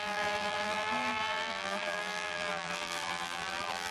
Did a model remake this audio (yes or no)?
yes